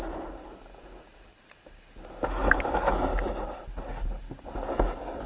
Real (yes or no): yes